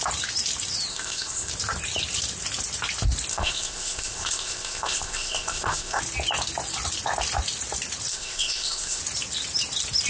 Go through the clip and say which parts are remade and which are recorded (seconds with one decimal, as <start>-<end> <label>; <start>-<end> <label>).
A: 0.0-0.9 recorded; 0.9-1.5 remade; 1.5-3.3 recorded; 3.3-6.0 remade; 6.0-8.1 recorded; 8.1-9.0 remade; 9.0-10.1 recorded